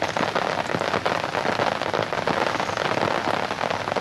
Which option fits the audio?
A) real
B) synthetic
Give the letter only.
A